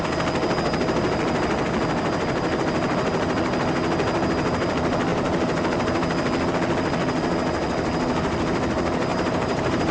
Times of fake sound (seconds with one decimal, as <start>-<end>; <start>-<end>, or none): 9.1-9.9

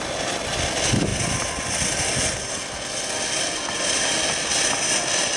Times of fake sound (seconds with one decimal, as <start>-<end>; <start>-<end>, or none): none

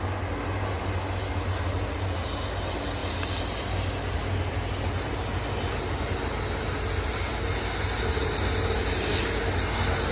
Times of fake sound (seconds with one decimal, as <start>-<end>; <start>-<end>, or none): none

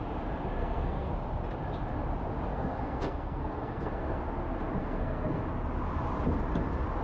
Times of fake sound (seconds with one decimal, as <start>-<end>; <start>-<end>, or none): 0.6-1.1; 2.5-4.2; 4.8-5.4

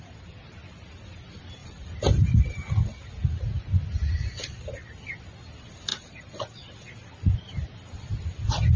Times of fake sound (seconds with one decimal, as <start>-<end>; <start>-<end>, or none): none

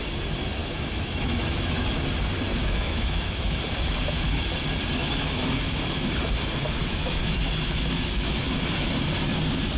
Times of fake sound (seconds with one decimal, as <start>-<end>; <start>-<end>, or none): 0.6-1.9; 2.5-3.6; 5.0-6.1; 6.8-8.9